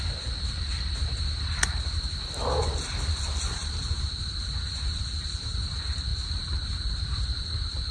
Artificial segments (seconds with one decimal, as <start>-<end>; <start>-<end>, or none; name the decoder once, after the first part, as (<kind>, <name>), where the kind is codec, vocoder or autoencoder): 3.6-4.5 (vocoder, BigVGAN v2); 6.1-7.9